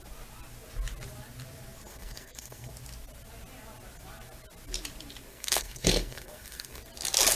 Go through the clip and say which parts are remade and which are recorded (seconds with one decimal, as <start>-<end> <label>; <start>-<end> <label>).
0.0-1.9 recorded; 1.9-2.7 remade; 2.7-5.3 recorded; 5.3-6.8 remade; 6.8-7.4 recorded